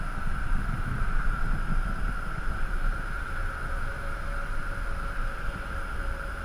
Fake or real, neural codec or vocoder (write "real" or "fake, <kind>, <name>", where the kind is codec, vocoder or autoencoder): real